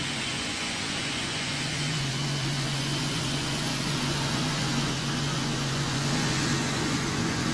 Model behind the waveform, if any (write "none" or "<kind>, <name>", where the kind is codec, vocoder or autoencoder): vocoder, Vocos